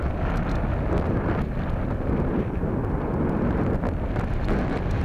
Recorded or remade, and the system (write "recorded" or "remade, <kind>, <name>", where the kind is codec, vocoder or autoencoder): recorded